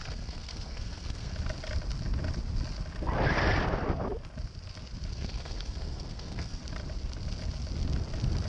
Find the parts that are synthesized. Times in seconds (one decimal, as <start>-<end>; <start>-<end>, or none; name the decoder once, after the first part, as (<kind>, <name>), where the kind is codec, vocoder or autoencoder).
0.0-1.3 (codec, SNAC); 5.1-6.6